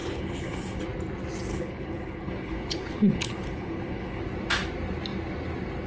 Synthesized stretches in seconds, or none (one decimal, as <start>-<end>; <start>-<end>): 0.0-0.8; 1.5-4.2